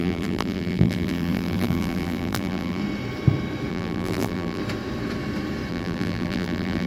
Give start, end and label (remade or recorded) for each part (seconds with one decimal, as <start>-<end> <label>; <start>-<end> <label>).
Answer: 0.0-2.8 remade; 2.8-3.7 recorded; 3.7-4.6 remade; 4.6-5.7 recorded; 5.7-6.9 remade